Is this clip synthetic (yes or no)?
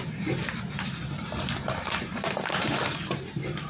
yes